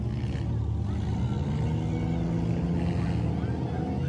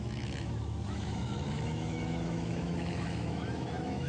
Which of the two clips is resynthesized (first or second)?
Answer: second